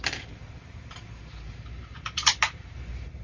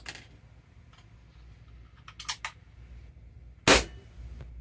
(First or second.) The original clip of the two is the second